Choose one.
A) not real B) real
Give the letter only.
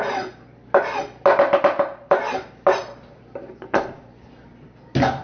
B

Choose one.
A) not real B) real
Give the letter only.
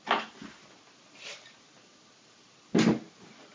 B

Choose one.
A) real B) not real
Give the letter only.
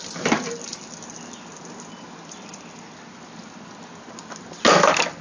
A